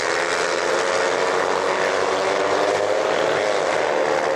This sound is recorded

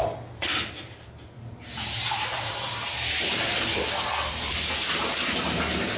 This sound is recorded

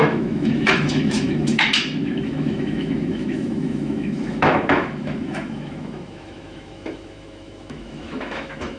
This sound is remade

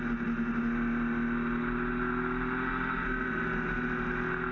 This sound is recorded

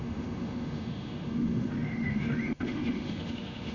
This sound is remade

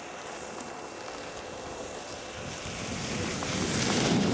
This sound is recorded